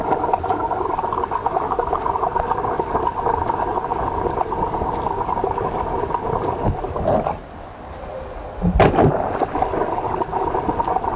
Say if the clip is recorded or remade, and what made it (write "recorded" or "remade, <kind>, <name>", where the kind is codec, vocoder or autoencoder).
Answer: recorded